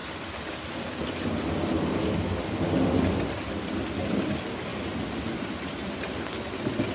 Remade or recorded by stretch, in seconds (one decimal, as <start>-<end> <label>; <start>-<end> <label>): 0.0-6.9 recorded